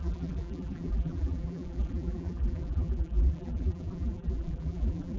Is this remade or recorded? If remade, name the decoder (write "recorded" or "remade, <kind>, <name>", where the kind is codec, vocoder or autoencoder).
remade, vocoder, BigVGAN v2